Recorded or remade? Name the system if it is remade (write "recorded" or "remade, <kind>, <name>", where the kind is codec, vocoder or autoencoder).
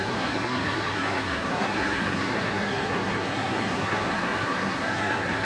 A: remade, codec, SNAC